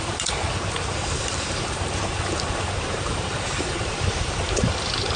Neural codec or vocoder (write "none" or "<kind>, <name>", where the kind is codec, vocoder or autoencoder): vocoder, BigVGAN v2